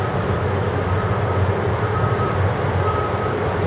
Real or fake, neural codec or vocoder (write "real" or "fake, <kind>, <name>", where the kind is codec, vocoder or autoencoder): real